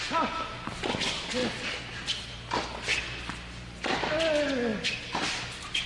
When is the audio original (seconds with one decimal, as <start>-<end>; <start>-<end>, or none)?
0.0-5.9